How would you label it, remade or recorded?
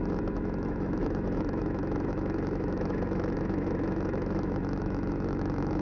remade